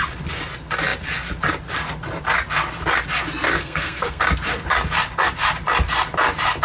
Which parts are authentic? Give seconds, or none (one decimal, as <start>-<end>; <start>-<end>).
0.0-3.6; 4.2-6.6